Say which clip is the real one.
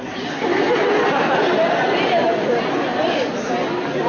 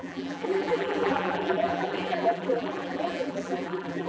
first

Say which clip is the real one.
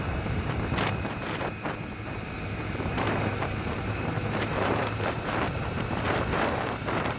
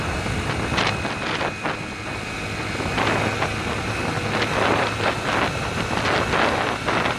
second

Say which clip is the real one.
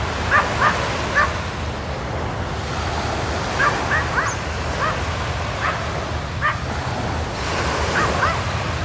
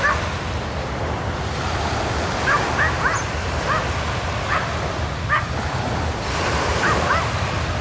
first